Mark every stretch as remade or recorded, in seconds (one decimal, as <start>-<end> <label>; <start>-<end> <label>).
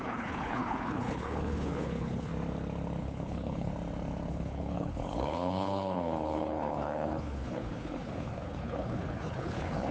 0.0-2.3 remade; 2.3-3.0 recorded; 3.0-3.7 remade; 3.7-4.3 recorded; 4.3-9.9 remade